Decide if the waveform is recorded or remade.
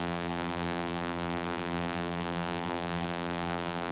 remade